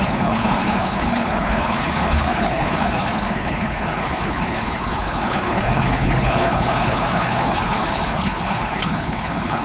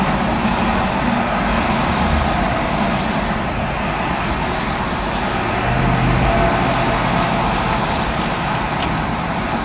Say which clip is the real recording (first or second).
second